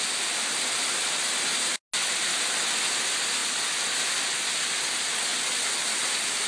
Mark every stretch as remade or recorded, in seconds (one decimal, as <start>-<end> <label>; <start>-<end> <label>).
0.0-6.5 recorded